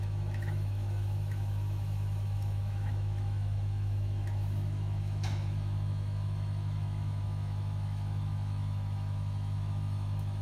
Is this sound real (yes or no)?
no